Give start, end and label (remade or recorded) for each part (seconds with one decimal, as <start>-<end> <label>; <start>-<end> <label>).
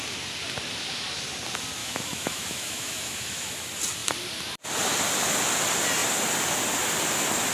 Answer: 0.0-1.8 recorded; 1.8-3.5 remade; 3.5-7.5 recorded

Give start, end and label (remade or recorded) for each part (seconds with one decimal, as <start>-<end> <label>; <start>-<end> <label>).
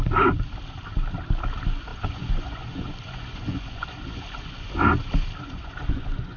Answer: 0.0-1.9 recorded; 1.9-4.7 remade; 4.7-5.4 recorded; 5.4-6.4 remade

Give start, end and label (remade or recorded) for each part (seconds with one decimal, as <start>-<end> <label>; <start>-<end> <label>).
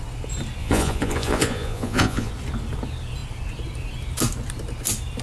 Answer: 0.0-0.6 recorded; 0.6-2.3 remade; 2.3-5.2 recorded